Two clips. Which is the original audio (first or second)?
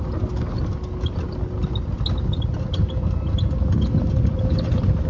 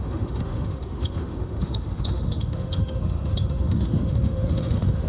first